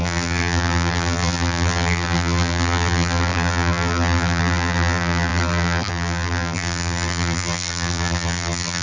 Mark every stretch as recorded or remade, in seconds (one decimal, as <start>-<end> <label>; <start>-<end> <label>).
0.0-8.8 remade